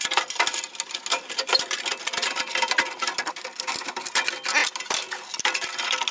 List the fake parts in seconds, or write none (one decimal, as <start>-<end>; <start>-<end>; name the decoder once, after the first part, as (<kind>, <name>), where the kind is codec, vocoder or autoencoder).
none